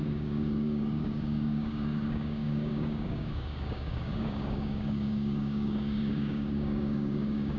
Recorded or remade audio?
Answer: remade